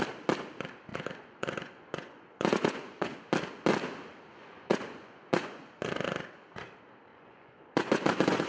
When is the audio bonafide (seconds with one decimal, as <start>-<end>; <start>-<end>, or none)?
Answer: 0.0-0.9; 3.2-4.3; 5.9-7.1